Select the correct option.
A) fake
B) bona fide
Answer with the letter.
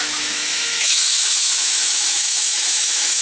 A